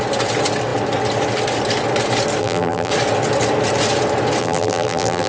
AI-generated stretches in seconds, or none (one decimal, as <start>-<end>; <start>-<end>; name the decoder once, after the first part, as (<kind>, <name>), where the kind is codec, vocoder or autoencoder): 2.4-2.9 (vocoder, BigVGAN v2); 4.4-5.3